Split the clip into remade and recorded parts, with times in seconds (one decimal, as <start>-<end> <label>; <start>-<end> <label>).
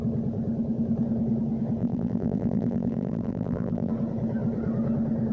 0.0-1.8 recorded; 1.8-3.9 remade; 3.9-5.3 recorded